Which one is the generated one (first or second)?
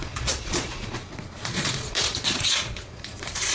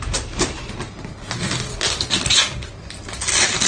first